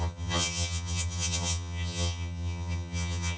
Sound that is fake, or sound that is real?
fake